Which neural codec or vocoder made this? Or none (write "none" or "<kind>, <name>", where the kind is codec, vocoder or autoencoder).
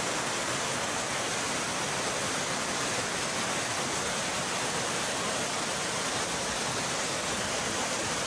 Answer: none